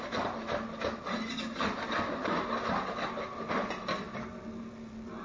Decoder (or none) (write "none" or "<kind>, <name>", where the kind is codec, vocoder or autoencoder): none